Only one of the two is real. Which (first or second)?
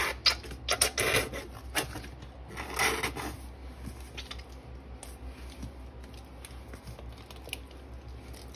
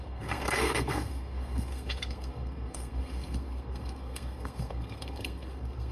first